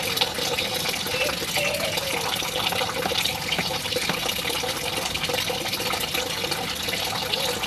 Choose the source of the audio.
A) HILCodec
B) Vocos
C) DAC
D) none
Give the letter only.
D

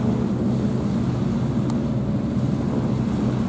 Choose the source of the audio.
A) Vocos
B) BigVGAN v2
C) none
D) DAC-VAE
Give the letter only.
C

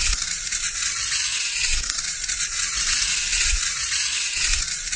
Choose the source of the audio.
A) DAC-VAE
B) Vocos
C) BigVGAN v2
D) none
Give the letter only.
B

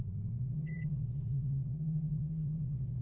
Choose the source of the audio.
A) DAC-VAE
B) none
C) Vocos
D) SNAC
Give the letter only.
C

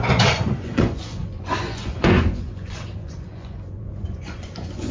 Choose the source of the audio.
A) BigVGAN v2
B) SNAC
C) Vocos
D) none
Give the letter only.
C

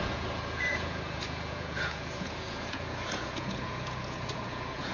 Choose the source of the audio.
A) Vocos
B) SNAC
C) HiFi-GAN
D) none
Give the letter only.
A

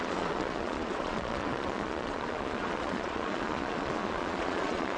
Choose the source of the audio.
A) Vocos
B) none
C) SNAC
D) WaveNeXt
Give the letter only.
A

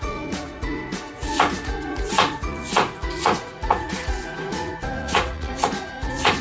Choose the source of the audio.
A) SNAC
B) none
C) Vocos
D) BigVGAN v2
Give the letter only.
C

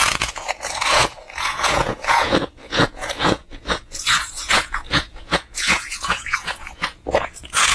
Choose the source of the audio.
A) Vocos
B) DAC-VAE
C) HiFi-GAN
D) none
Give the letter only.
A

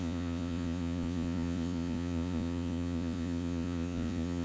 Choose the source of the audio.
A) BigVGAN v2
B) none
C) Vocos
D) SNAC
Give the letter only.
C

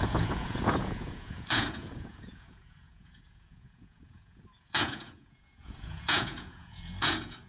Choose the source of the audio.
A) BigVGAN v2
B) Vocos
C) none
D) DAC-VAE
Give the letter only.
B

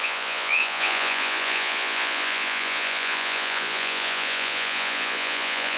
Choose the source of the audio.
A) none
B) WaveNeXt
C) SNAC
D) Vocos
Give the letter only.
D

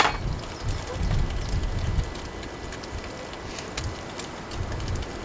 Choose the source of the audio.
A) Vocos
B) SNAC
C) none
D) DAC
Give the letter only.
C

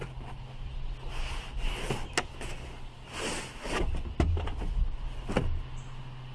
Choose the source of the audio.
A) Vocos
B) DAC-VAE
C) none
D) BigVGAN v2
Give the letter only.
C